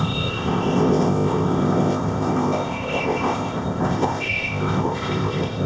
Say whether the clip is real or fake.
fake